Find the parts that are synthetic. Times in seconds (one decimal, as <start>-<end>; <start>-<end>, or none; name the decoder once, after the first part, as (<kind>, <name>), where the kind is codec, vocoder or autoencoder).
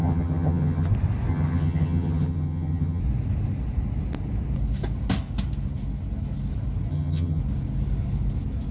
0.0-0.9 (vocoder, HiFi-GAN); 1.3-3.0; 6.9-7.4